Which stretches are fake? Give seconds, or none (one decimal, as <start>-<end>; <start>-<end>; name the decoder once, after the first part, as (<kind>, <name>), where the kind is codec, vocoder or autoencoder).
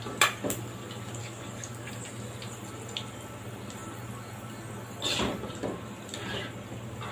1.2-1.9 (codec, DAC)